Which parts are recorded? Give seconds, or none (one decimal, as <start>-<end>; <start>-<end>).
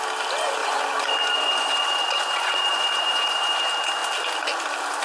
0.0-0.6; 3.6-5.0